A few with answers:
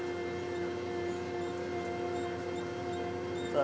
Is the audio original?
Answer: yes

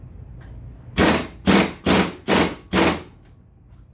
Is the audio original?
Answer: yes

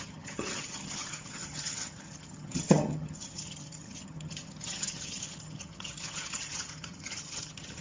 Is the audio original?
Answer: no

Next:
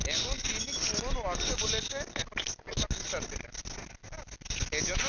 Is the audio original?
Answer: yes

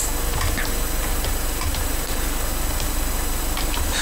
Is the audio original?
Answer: yes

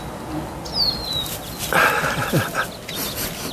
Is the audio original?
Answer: yes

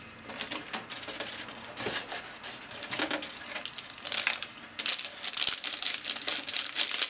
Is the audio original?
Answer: yes